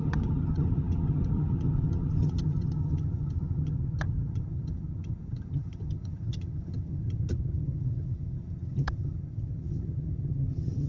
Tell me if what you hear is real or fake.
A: fake